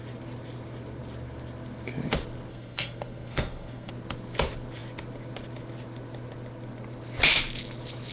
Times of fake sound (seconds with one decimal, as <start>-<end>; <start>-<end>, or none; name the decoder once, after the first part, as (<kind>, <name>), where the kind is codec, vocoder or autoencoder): 2.5-3.9 (codec, SNAC)